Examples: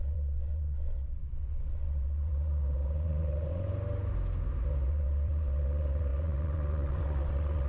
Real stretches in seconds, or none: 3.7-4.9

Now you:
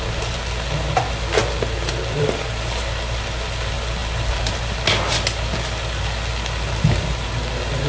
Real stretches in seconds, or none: 0.0-7.9